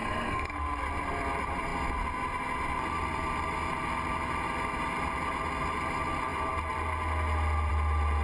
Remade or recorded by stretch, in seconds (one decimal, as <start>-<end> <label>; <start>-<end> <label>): 0.0-0.6 remade; 0.6-8.2 recorded